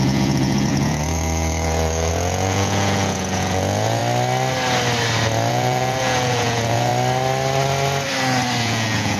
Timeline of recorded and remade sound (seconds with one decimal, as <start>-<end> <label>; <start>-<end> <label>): 0.0-4.0 remade; 4.0-5.5 recorded; 5.5-6.9 remade; 6.9-8.6 recorded; 8.6-9.2 remade